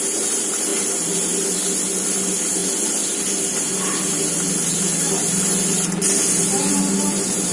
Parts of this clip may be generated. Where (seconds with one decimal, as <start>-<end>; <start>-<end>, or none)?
none